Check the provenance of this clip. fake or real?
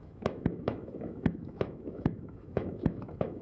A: fake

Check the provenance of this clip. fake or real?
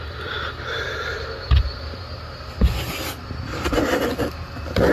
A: real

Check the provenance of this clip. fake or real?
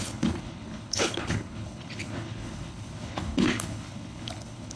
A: fake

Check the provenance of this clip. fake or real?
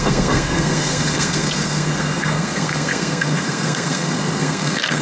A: fake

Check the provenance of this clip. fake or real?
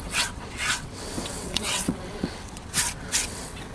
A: fake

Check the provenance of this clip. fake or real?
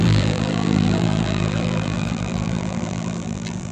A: fake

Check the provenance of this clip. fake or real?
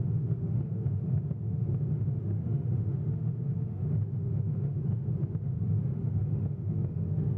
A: fake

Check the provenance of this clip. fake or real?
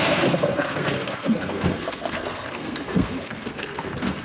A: fake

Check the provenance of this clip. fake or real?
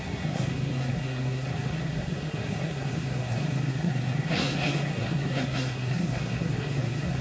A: fake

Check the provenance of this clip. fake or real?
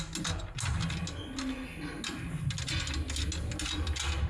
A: real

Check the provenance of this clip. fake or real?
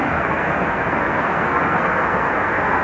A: fake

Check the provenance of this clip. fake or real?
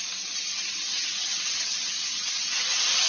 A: fake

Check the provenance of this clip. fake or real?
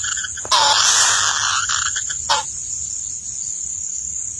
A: real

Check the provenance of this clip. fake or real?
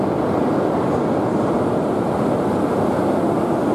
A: real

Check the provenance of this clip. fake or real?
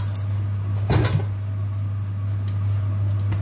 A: real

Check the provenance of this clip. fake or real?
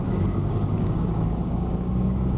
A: fake